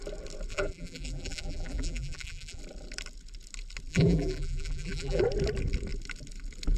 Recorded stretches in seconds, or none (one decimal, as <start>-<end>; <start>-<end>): 0.0-0.5; 2.6-3.9; 5.2-6.8